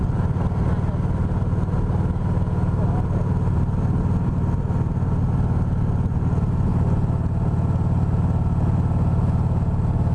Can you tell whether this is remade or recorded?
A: recorded